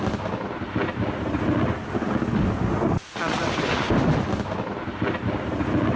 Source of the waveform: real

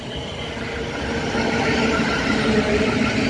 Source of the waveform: fake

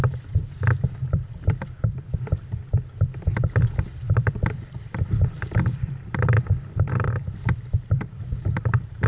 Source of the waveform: fake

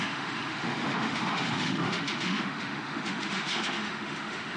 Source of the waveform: fake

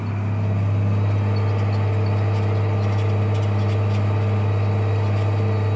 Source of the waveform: real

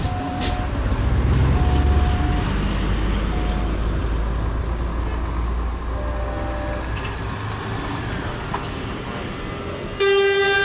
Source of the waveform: real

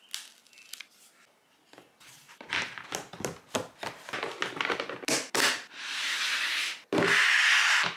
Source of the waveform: real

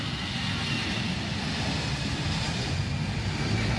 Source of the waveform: real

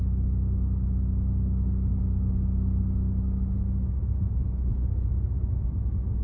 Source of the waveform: real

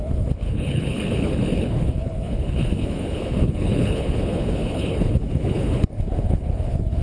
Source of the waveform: fake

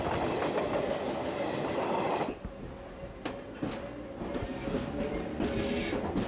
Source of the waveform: real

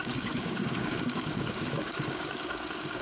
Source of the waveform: fake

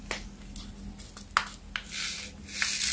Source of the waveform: real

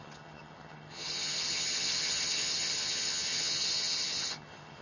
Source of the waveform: fake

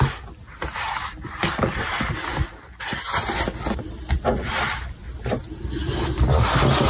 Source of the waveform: real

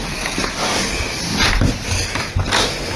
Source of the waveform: real